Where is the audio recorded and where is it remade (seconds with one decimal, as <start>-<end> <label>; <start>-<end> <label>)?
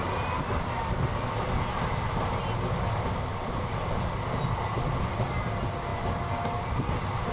0.0-7.3 recorded